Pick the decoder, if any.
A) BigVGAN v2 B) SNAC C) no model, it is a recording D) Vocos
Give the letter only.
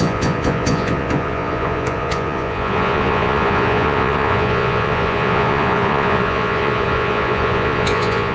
D